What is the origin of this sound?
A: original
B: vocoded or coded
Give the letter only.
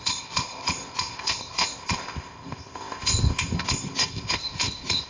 B